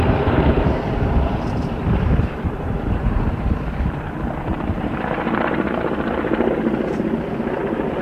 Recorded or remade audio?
remade